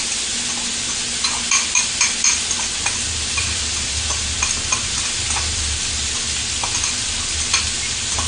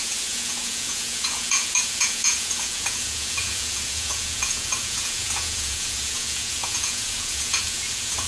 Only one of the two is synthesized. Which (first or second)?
second